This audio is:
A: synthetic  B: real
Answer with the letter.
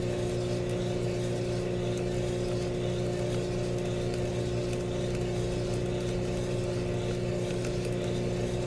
B